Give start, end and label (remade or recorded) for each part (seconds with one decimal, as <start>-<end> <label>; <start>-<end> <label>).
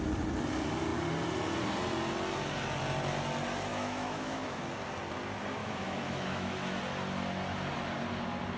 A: 0.0-3.7 recorded; 3.7-4.6 remade; 4.6-5.6 recorded; 5.6-6.8 remade; 6.8-8.6 recorded